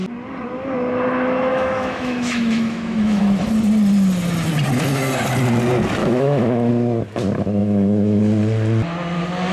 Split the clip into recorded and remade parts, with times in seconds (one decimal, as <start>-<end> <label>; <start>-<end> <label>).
0.0-1.5 recorded; 1.5-3.2 remade; 3.2-6.0 recorded; 6.0-6.7 remade; 6.7-7.6 recorded; 7.6-8.2 remade; 8.2-9.5 recorded